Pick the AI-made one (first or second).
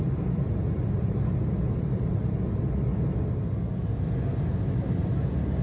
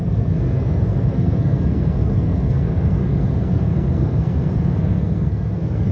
second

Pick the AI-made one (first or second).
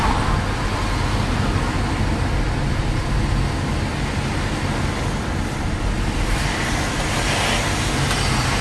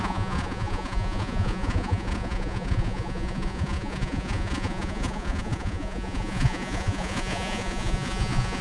second